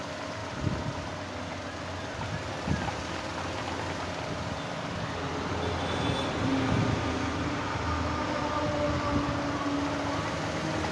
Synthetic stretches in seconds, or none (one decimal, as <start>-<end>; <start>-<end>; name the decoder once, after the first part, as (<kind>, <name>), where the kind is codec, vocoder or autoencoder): none